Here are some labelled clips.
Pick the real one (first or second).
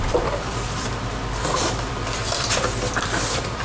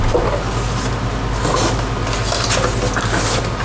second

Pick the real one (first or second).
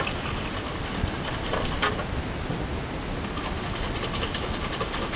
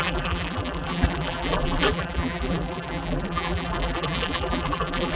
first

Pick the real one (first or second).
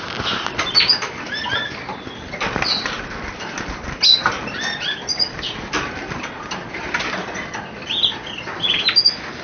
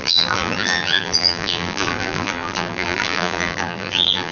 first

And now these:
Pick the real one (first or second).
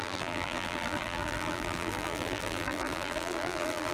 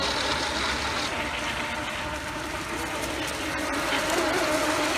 second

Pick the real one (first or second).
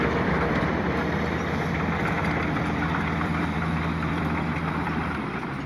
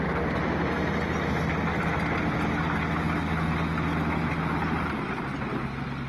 second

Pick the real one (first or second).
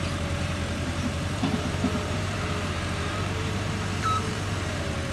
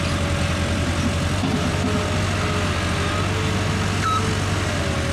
second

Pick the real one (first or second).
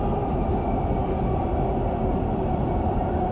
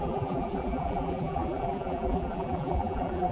first